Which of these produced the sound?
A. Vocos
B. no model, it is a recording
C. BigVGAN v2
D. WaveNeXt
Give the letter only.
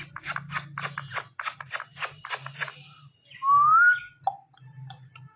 B